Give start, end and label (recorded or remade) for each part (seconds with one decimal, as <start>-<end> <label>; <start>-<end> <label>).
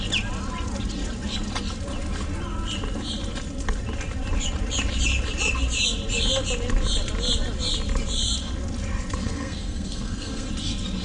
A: 0.0-9.2 recorded; 9.2-10.5 remade; 10.5-11.0 recorded